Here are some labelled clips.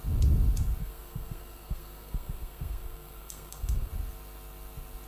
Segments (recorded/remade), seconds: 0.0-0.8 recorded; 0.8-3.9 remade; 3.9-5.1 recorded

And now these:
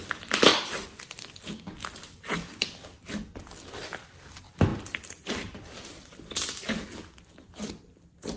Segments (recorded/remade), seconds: 0.0-0.5 recorded; 0.5-1.5 remade; 1.5-8.4 recorded